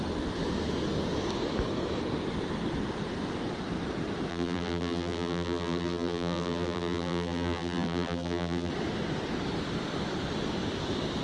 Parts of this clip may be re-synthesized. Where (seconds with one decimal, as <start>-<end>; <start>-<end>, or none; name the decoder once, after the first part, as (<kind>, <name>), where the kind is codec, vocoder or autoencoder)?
4.3-8.7 (vocoder, BigVGAN v2)